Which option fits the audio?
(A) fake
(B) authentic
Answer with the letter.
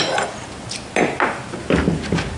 B